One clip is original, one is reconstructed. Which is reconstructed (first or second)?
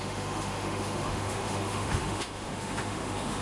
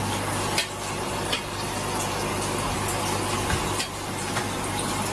first